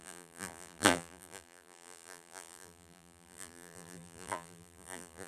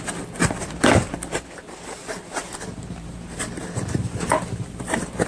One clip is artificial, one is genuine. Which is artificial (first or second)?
first